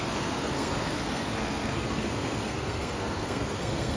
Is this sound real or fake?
fake